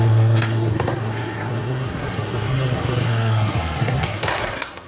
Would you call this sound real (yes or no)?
no